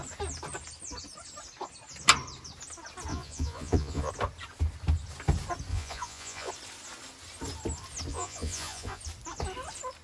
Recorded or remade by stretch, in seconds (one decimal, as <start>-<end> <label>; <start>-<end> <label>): 0.0-3.1 recorded; 3.1-4.1 remade; 4.1-5.7 recorded; 5.7-6.5 remade; 6.5-8.1 recorded; 8.1-9.0 remade; 9.0-10.0 recorded